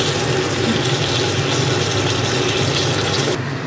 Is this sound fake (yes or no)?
no